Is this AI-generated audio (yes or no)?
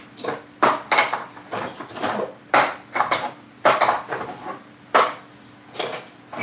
no